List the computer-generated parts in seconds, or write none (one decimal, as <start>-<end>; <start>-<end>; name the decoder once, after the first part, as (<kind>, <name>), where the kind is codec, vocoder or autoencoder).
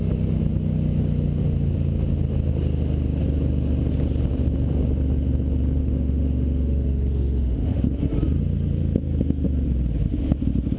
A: 5.8-8.0 (autoencoder, DAC-VAE)